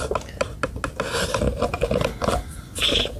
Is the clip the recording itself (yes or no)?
yes